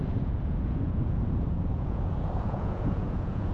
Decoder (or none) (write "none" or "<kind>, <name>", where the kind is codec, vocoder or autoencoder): vocoder, Vocos